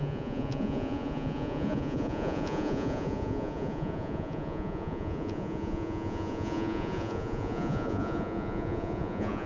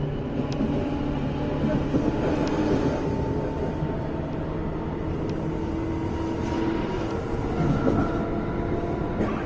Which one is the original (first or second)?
second